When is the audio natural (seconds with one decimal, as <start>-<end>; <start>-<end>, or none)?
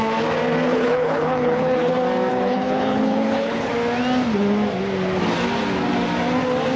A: 0.0-0.7; 1.9-2.3; 3.7-6.8